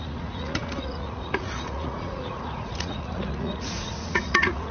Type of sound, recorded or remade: remade